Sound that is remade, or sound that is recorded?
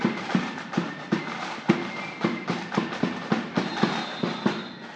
recorded